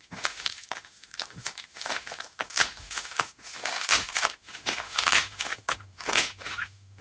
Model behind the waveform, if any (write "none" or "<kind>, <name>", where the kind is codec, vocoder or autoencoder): autoencoder, DAC-VAE